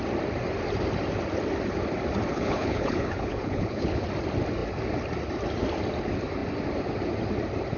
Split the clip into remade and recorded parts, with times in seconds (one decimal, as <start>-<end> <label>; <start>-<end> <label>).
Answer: 0.0-2.3 recorded; 2.3-4.0 remade; 4.0-7.8 recorded